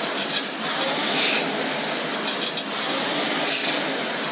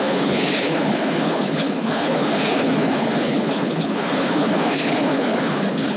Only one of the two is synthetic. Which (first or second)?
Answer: second